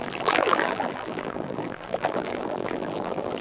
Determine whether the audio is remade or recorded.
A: remade